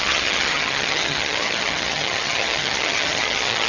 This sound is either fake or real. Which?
fake